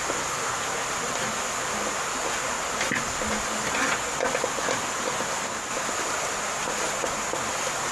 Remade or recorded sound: recorded